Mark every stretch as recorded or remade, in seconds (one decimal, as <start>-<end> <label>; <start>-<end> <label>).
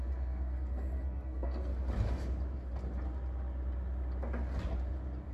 0.0-1.7 remade; 1.7-5.3 recorded